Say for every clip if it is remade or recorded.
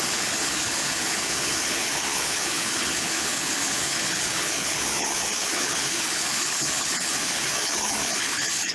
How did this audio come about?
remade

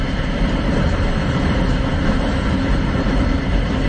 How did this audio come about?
remade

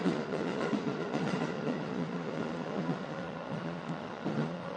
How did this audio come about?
remade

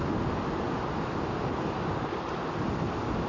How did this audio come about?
recorded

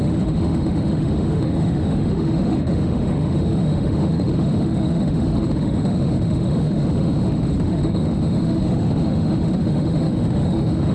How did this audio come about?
remade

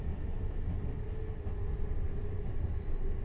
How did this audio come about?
recorded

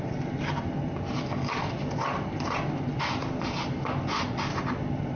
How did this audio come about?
recorded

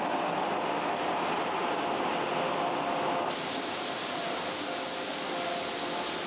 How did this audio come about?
recorded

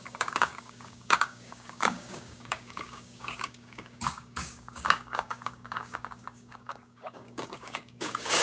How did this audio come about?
remade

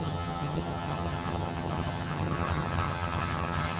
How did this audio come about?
remade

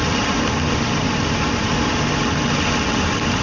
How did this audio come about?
recorded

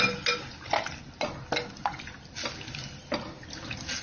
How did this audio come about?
recorded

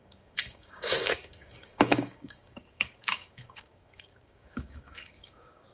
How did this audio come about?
remade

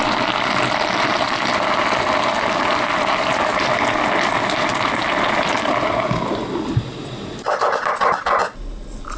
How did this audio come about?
recorded